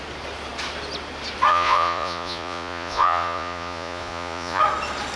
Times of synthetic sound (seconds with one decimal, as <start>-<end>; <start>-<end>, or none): 1.5-4.6